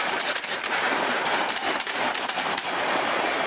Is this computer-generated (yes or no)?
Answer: yes